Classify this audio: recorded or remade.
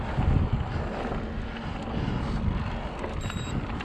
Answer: recorded